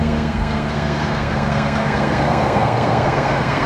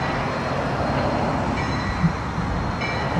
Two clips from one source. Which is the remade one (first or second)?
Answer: first